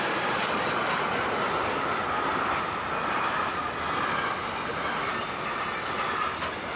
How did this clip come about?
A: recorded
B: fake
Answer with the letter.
A